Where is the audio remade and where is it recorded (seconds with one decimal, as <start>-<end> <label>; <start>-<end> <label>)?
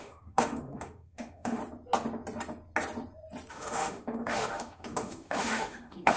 0.0-1.6 remade; 1.6-3.5 recorded; 3.5-6.2 remade